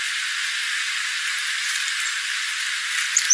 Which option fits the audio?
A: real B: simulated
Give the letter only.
A